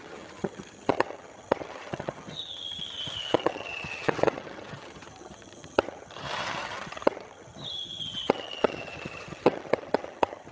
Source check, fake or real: fake